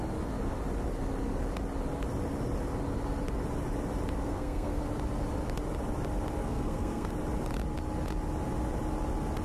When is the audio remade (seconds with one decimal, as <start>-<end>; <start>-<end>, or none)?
4.2-4.8; 6.4-7.1